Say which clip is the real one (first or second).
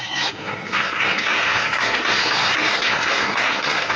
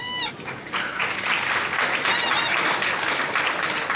second